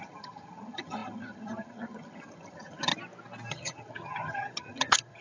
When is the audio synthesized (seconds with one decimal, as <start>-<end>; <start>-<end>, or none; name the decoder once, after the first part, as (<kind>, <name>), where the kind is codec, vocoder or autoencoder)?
0.0-2.9 (vocoder, HiFi-GAN); 3.5-5.2